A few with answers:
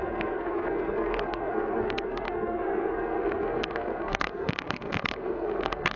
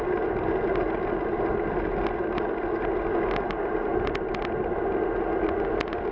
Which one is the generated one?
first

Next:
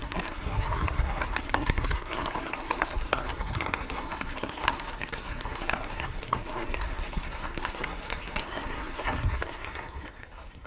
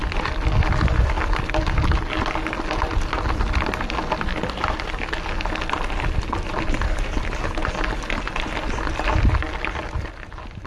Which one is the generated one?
first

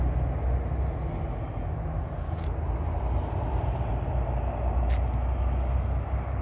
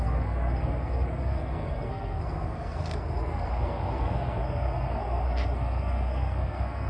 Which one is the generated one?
second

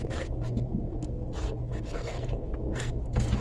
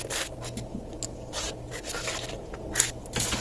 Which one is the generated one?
first